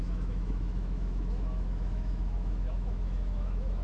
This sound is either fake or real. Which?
fake